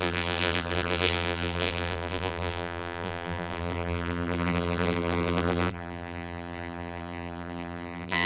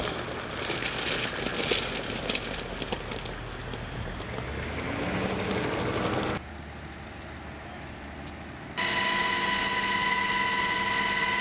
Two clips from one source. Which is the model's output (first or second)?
first